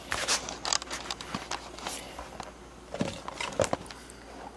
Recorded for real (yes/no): yes